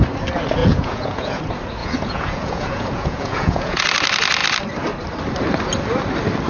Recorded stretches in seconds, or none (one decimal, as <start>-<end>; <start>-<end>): 0.0-0.6; 1.4-1.8; 3.8-6.5